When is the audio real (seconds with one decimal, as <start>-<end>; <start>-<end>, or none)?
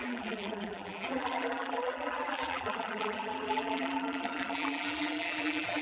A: none